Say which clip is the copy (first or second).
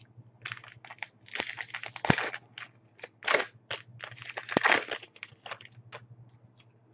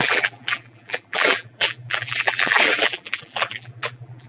second